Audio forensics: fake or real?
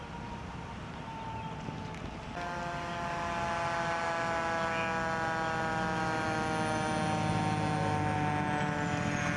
real